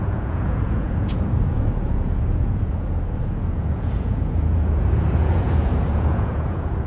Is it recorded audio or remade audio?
remade